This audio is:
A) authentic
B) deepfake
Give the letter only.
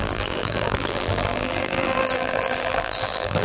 B